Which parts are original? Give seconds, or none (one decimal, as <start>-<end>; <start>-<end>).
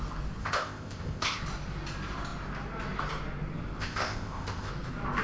0.0-0.4; 1.4-3.8; 4.7-5.2